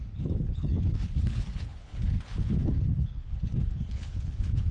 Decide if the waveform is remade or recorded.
remade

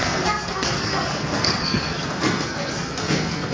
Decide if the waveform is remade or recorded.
remade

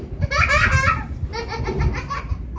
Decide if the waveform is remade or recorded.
recorded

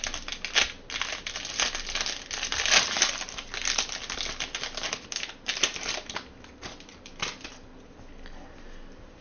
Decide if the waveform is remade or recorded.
recorded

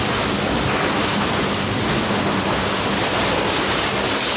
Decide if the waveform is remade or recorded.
recorded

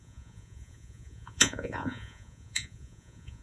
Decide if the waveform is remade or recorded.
remade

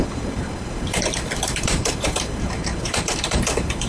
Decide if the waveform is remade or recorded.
remade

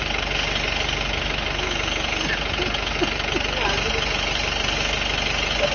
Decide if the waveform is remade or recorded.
recorded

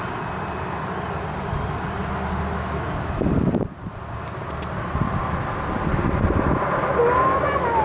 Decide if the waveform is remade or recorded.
recorded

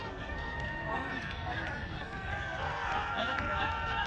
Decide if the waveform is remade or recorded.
remade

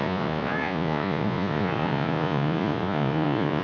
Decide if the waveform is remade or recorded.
remade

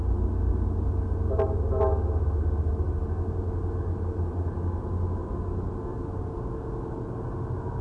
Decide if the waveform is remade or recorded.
recorded